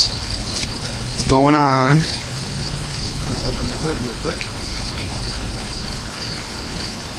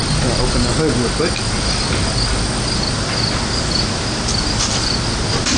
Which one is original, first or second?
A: second